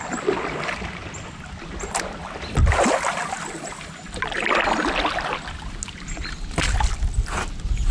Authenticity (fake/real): real